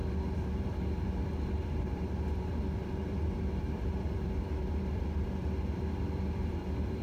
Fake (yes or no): yes